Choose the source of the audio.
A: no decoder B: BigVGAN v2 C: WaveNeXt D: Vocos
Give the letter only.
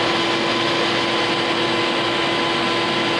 A